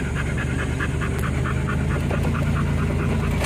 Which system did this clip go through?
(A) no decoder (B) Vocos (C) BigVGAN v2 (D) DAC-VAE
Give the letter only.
A